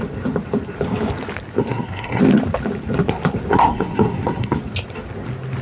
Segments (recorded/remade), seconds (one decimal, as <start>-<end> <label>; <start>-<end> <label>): 0.0-1.6 recorded; 1.6-2.2 remade; 2.2-3.5 recorded; 3.5-4.6 remade; 4.6-5.6 recorded